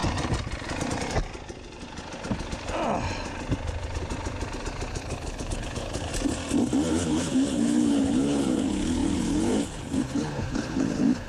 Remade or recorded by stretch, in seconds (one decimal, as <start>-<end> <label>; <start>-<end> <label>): 0.0-4.9 recorded; 4.9-6.1 remade; 6.1-6.9 recorded; 6.9-11.3 remade